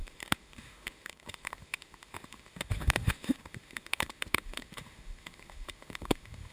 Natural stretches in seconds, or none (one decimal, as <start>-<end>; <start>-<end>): none